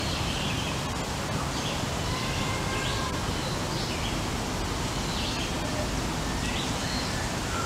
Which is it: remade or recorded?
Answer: recorded